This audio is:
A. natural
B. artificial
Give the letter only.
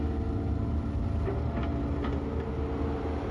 A